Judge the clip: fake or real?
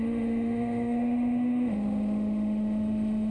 fake